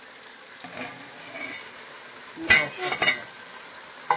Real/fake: real